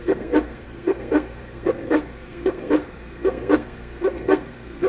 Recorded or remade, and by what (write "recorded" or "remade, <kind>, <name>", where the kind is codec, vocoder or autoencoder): remade, codec, SNAC